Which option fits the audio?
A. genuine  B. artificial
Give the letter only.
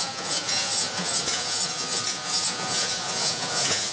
B